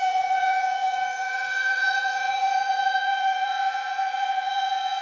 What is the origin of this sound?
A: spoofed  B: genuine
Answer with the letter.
A